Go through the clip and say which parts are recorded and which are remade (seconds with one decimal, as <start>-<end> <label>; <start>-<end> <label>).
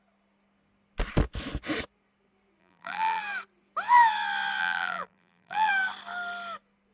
0.0-2.6 recorded; 2.6-3.2 remade; 3.2-4.6 recorded; 4.6-5.7 remade; 5.7-6.9 recorded